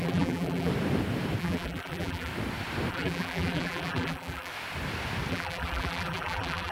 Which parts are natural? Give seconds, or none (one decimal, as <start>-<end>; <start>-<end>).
0.7-1.4; 2.3-2.9; 4.5-5.3